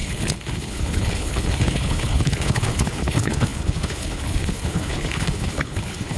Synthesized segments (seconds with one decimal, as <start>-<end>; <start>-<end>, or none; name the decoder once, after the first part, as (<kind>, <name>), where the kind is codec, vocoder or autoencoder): 0.0-6.2 (codec, HILCodec)